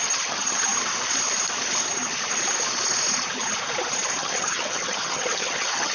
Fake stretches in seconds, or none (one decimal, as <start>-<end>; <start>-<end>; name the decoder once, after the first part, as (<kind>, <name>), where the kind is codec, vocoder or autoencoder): 0.0-0.7 (vocoder, HiFi-GAN); 4.2-5.9